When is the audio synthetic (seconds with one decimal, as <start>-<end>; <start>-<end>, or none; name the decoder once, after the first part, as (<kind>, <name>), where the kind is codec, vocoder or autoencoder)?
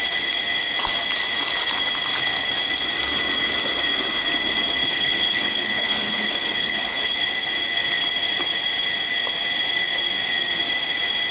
4.8-7.2 (codec, HILCodec)